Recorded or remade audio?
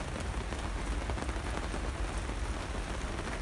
recorded